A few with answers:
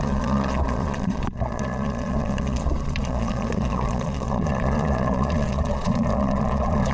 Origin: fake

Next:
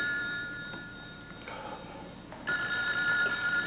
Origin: real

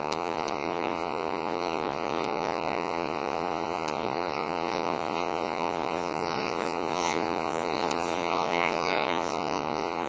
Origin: fake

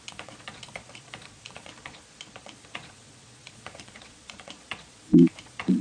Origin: fake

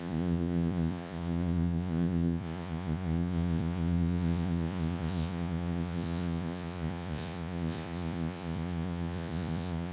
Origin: fake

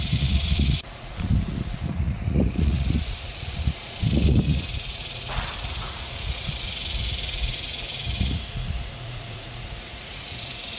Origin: fake